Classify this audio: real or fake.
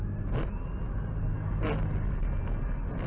real